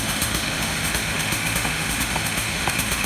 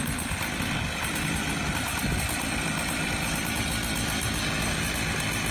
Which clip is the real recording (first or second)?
second